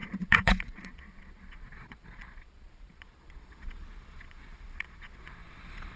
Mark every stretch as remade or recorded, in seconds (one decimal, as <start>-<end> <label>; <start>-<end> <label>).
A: 0.0-6.0 remade